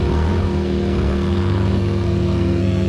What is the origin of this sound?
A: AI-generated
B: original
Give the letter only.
A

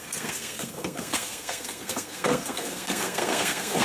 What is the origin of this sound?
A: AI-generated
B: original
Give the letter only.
A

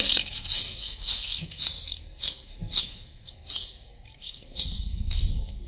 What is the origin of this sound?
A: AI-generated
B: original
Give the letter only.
A